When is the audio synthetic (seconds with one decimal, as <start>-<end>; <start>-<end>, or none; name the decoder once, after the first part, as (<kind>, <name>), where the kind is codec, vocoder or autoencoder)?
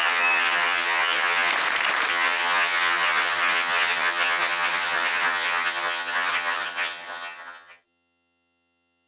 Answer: 0.0-1.5 (vocoder, HiFi-GAN); 2.1-9.1